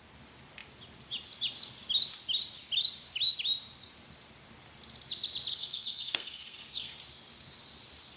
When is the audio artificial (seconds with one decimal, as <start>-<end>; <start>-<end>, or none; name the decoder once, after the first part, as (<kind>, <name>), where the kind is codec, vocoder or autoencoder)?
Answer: 5.5-7.0 (codec, SNAC)